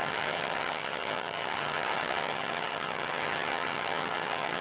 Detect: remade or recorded remade